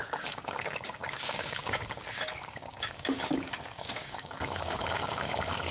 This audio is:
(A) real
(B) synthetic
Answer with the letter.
B